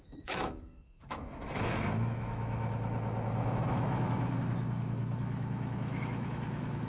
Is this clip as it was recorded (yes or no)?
no